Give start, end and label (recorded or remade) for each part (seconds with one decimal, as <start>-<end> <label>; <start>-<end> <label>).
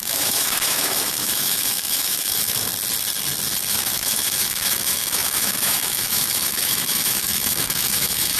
0.0-2.7 remade; 2.7-3.7 recorded; 3.7-8.4 remade